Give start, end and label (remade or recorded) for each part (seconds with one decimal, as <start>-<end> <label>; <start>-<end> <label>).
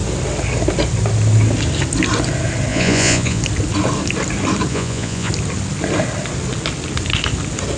0.0-2.7 recorded; 2.7-3.4 remade; 3.4-4.7 recorded; 4.7-5.3 remade; 5.3-7.8 recorded